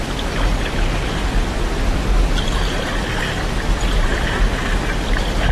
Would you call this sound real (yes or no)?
yes